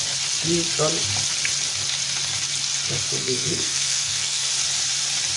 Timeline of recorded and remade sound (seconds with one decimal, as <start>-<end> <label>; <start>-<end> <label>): 0.0-3.2 recorded; 3.2-4.5 remade; 4.5-5.4 recorded